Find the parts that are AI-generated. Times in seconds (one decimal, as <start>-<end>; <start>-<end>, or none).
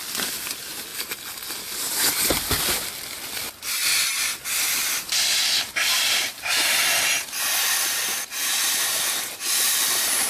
0.0-0.9; 2.6-3.9; 4.6-10.3